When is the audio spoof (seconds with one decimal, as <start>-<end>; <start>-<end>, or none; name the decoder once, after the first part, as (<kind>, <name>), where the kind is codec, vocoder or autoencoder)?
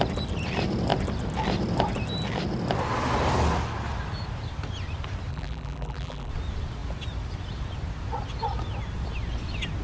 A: 5.3-6.3 (vocoder, BigVGAN v2)